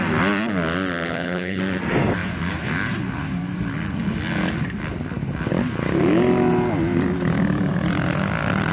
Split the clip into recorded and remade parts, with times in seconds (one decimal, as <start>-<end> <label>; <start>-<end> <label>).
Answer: 0.0-1.1 recorded; 1.1-1.6 remade; 1.6-8.7 recorded